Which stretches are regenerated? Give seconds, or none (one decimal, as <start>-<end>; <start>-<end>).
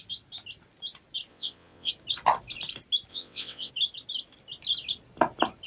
1.3-1.9; 3.1-3.7